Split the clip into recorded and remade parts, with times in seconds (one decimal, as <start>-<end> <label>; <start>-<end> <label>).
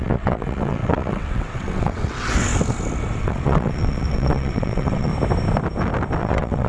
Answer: 0.0-2.5 remade; 2.5-3.2 recorded; 3.2-5.1 remade; 5.1-6.2 recorded; 6.2-6.7 remade